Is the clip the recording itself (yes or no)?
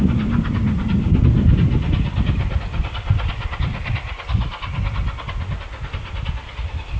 yes